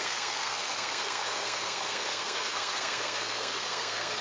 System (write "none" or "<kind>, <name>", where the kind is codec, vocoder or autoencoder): codec, SNAC